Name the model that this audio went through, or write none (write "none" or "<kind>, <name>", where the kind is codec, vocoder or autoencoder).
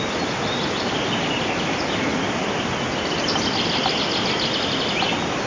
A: none